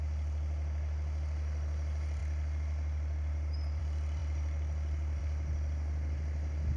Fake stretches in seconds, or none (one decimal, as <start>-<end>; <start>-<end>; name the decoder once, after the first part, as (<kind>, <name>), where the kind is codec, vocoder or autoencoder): none